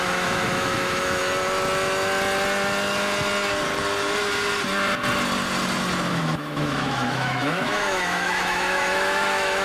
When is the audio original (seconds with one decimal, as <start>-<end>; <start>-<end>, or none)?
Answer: 1.2-6.1